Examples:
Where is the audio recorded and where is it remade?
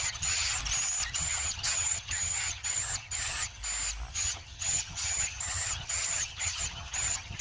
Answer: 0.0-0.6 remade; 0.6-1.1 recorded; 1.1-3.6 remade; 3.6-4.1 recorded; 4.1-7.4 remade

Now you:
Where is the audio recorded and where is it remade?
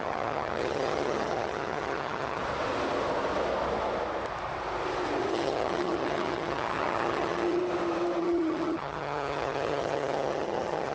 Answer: 0.0-2.4 remade; 2.4-5.3 recorded; 5.3-7.6 remade; 7.6-8.2 recorded; 8.2-10.9 remade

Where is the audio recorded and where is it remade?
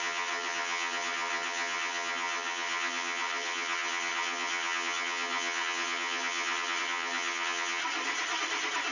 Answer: 0.0-7.8 remade; 7.8-8.9 recorded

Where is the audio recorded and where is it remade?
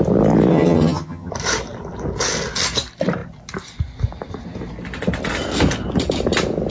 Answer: 0.0-0.5 recorded; 0.5-1.3 remade; 1.3-6.7 recorded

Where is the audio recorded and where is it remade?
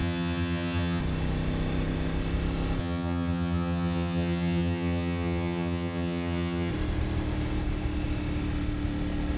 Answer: 0.0-1.0 remade; 1.0-2.8 recorded; 2.8-6.7 remade; 6.7-9.4 recorded